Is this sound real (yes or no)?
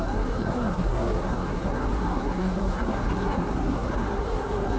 no